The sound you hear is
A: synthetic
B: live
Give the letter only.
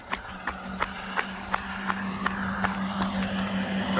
B